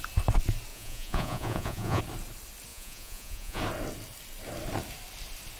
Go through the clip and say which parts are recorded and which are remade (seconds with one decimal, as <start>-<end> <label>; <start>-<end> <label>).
0.0-0.7 recorded; 0.7-2.0 remade; 2.0-2.7 recorded; 2.7-3.6 remade; 3.6-5.6 recorded